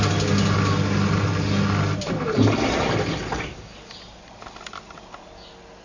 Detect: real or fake real